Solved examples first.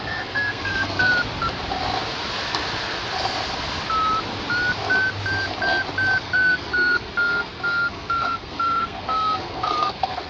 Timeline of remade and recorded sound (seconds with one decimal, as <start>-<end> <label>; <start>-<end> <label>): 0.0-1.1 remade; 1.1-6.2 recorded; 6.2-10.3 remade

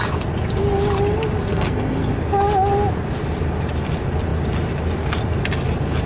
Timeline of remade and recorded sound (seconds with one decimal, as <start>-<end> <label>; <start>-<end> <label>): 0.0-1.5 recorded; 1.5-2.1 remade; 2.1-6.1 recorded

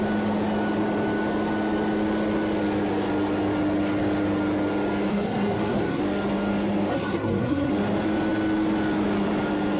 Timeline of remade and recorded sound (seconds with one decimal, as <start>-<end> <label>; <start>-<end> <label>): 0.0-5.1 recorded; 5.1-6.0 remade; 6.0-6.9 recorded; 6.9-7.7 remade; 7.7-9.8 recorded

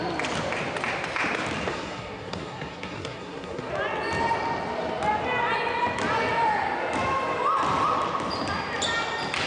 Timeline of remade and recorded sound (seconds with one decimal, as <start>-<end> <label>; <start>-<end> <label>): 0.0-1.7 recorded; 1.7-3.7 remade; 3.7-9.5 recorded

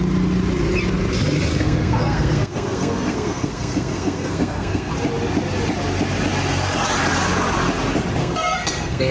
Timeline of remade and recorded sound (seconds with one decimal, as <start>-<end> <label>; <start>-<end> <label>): 0.0-1.5 recorded; 1.5-4.9 remade; 4.9-8.2 recorded; 8.2-9.1 remade